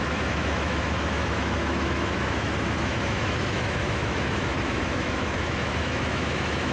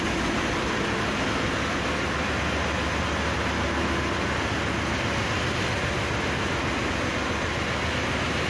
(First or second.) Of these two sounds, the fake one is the first